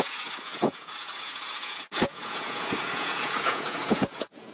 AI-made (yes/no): yes